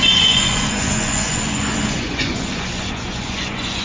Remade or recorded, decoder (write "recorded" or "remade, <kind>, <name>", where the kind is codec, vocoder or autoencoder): remade, vocoder, Vocos